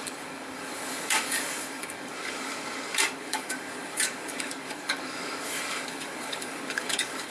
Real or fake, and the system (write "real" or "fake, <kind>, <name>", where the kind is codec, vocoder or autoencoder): fake, codec, DAC